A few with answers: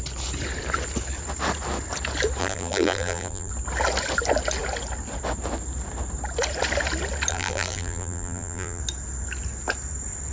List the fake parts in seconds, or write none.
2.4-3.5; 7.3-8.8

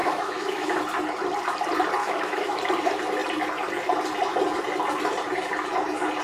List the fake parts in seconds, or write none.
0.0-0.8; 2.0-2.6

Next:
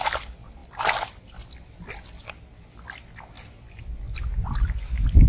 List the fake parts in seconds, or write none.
none

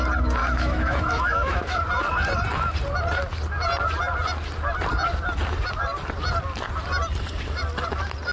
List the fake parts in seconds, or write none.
0.4-1.8